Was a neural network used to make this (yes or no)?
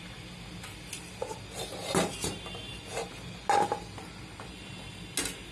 no